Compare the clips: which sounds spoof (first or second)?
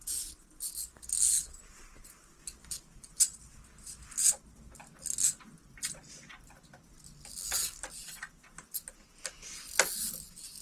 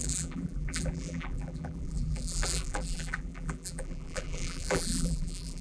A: second